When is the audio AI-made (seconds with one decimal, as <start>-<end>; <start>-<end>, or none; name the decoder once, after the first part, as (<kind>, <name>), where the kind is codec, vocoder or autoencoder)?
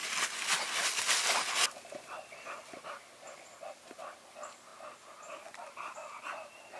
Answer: none